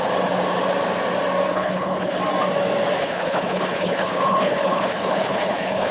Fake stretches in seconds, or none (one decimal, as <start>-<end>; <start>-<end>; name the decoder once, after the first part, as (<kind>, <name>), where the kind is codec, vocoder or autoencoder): 1.5-2.2 (codec, HILCodec); 3.0-5.9